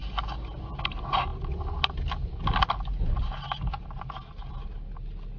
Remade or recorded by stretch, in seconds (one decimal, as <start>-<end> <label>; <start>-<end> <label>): 0.0-5.4 recorded